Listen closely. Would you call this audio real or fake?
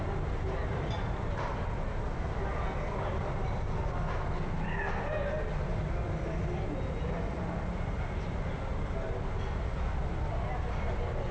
real